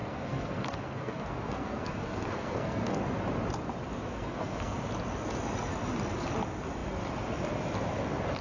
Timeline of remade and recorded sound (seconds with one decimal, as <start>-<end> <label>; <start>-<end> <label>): 0.0-3.0 remade; 3.0-4.1 recorded; 4.1-4.8 remade; 4.8-8.4 recorded